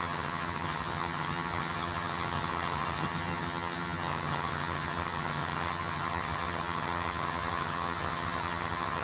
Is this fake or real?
fake